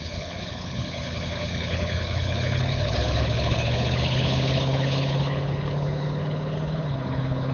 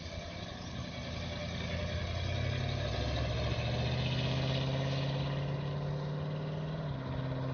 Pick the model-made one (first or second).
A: first